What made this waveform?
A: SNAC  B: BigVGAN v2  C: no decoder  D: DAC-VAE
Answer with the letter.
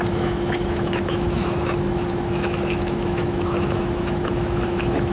D